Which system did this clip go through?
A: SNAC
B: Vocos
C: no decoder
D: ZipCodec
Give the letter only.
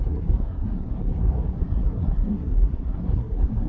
A